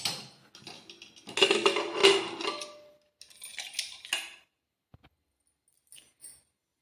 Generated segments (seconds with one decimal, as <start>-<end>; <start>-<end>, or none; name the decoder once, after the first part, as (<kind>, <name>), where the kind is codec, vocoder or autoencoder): none